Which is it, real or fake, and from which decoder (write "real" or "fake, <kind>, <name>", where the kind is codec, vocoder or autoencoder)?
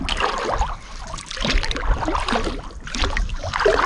real